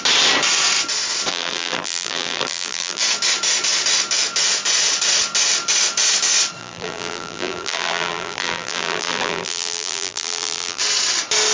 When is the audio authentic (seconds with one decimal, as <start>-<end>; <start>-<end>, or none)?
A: 0.0-1.3; 3.0-6.6; 10.8-11.5

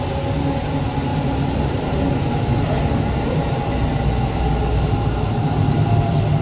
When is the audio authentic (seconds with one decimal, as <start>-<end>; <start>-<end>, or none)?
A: 0.0-6.4

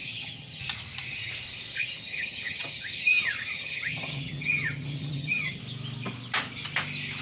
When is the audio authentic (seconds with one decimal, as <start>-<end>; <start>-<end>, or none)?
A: 0.6-1.8; 5.6-7.2